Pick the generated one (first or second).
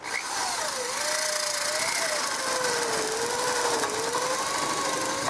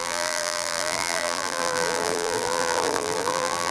second